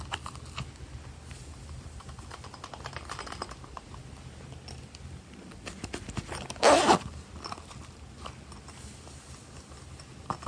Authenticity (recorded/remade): recorded